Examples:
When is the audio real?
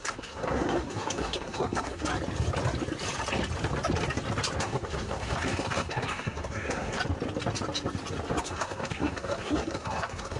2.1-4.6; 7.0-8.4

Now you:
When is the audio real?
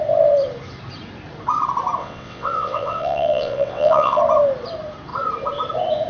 0.0-2.0; 4.2-6.1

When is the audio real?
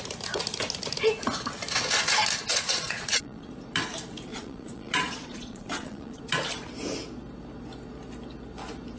0.0-2.5; 3.5-4.3; 6.2-9.0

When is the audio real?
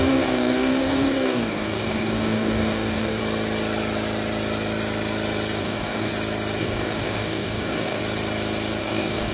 3.2-5.6; 6.1-6.6; 8.0-8.8